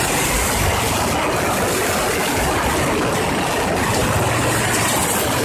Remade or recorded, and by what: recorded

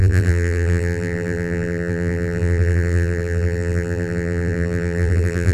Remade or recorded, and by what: remade, vocoder, BigVGAN v2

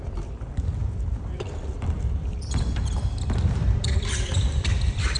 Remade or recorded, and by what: remade, vocoder, BigVGAN v2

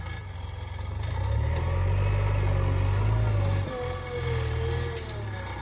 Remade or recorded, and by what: recorded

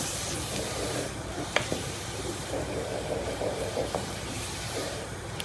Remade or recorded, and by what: remade, vocoder, BigVGAN v2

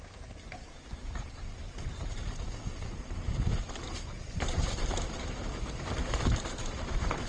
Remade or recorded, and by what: remade, vocoder, BigVGAN v2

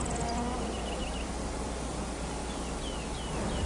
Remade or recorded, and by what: recorded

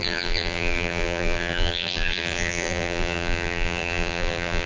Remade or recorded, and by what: remade, vocoder, BigVGAN v2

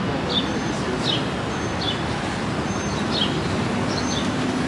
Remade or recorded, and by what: recorded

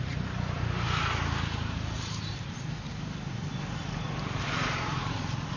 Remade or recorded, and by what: remade, vocoder, BigVGAN v2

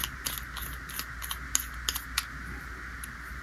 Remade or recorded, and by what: recorded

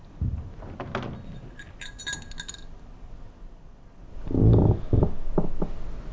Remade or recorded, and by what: recorded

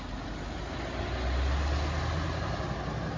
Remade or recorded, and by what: recorded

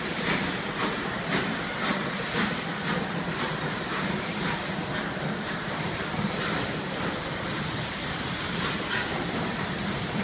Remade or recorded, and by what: remade, vocoder, BigVGAN v2